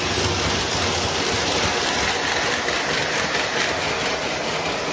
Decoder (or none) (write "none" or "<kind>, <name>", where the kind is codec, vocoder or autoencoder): none